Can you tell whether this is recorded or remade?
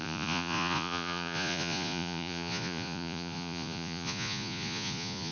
remade